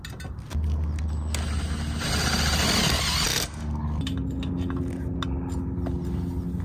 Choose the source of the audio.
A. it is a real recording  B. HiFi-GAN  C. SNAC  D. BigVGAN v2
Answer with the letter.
A